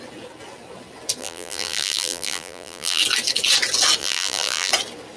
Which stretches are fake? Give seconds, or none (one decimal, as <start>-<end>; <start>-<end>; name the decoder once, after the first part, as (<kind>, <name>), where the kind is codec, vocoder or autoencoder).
1.2-3.0 (vocoder, BigVGAN v2); 4.0-4.7